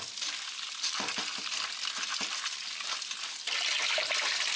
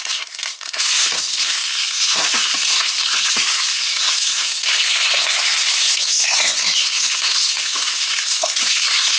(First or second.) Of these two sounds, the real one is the first